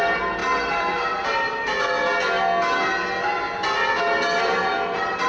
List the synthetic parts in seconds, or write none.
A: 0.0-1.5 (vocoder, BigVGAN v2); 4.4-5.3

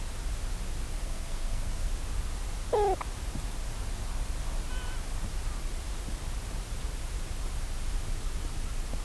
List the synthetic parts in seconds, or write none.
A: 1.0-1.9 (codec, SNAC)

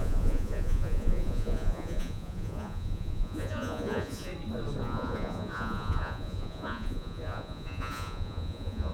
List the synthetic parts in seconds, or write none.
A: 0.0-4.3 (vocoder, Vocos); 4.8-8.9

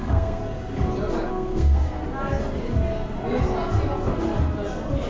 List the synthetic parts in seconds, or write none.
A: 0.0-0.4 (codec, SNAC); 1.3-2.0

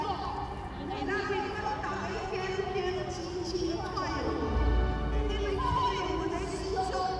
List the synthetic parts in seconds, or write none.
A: none

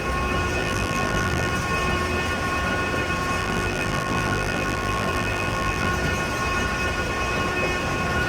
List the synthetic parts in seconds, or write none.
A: 0.6-1.5 (vocoder, BigVGAN v2); 3.4-5.9